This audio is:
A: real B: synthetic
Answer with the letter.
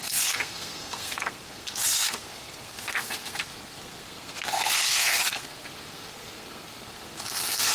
B